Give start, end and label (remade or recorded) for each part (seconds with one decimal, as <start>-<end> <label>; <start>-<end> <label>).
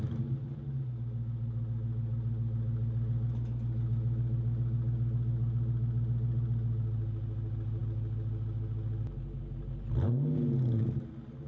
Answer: 0.0-11.5 recorded